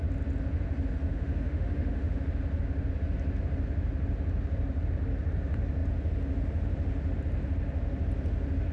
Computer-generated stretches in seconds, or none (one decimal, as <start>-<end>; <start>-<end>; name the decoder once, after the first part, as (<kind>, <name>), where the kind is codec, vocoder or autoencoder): 1.1-2.2 (autoencoder, DAC-VAE)